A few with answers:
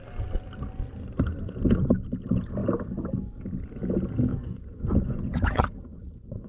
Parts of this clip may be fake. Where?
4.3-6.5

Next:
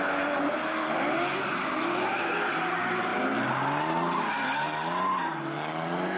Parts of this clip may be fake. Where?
none

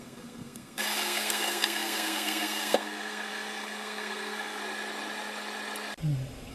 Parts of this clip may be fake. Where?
0.0-4.6

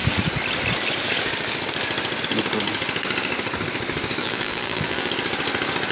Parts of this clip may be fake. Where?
4.2-5.1

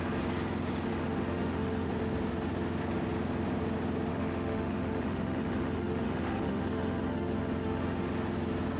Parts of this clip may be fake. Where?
0.9-1.9; 4.1-8.1

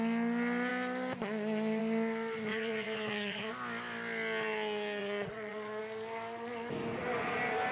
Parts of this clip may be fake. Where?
2.5-3.5; 5.0-5.8

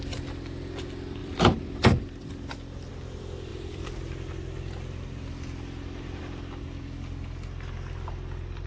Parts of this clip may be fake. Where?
1.2-2.9; 3.5-6.2